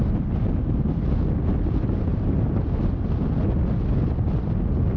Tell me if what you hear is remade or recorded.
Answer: recorded